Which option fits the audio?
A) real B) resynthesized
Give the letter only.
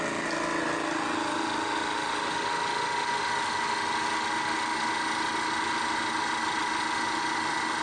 A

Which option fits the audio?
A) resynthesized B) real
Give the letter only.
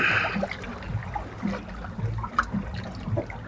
B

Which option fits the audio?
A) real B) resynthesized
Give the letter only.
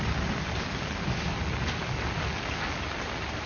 A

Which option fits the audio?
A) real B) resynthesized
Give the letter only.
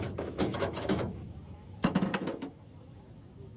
B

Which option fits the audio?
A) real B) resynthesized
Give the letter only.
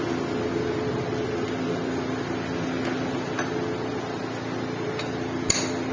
A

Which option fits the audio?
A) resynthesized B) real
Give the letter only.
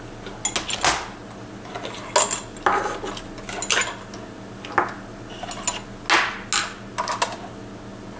B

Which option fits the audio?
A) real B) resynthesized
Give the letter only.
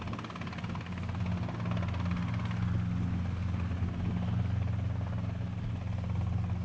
A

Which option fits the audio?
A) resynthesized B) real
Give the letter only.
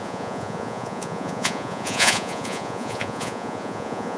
A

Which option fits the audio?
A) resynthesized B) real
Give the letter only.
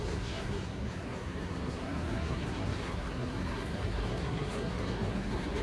A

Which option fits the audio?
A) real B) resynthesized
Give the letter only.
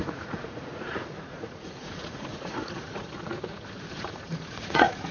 B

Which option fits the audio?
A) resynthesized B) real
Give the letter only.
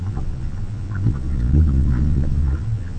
A